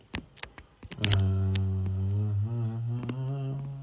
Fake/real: real